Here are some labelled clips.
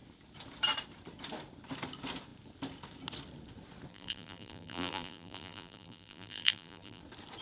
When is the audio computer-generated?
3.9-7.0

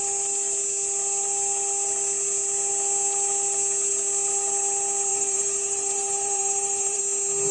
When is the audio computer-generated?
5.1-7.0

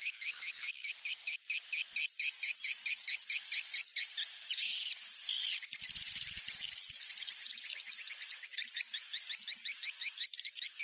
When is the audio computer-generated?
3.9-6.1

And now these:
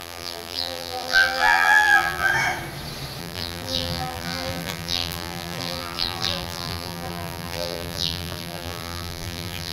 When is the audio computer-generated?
0.0-2.3; 3.2-9.7

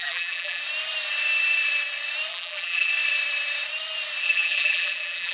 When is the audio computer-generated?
0.0-0.6; 2.3-2.9; 4.2-5.3

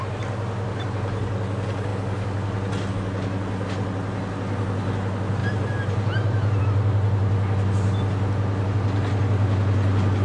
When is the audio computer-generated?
5.4-6.6

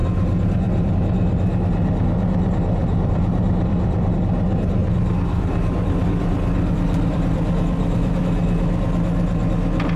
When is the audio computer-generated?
2.8-4.2; 4.8-8.2

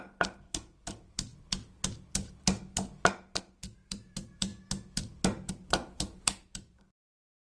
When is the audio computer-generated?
0.0-1.3; 3.4-4.5; 5.5-7.5